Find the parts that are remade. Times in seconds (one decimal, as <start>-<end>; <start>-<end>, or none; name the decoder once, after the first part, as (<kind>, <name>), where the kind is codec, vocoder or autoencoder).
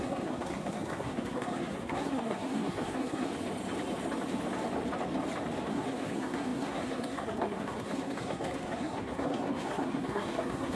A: 0.0-3.3 (codec, SNAC); 5.7-10.8